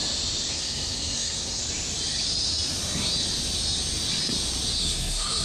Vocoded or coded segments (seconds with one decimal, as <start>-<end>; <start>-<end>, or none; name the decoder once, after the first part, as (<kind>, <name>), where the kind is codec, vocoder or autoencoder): 0.5-1.6 (codec, SNAC); 4.8-5.4